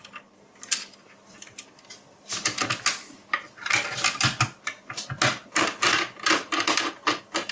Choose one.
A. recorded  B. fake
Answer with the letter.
A